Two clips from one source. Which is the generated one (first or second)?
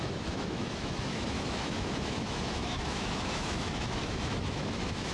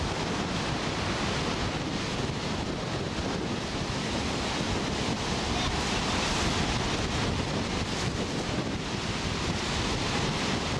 first